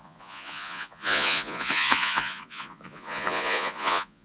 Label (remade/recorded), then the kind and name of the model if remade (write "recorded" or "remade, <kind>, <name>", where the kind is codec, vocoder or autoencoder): remade, vocoder, Vocos